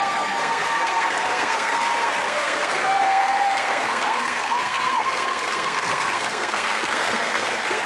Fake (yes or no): yes